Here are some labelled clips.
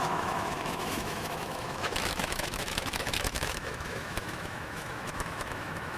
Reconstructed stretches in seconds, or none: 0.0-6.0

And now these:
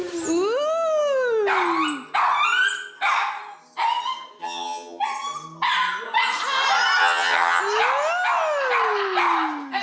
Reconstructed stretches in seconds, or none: 4.4-5.0; 7.0-7.6

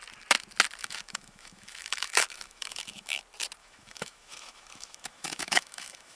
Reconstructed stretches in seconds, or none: 0.8-3.2; 3.6-6.2